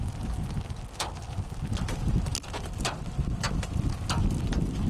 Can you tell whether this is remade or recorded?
recorded